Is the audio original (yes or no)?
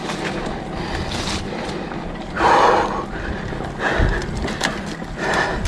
yes